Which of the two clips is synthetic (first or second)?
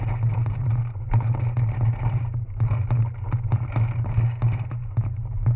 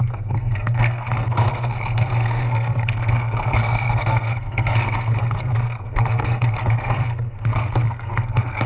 second